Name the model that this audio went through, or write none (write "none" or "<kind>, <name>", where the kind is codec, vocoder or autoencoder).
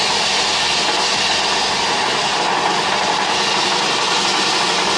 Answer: none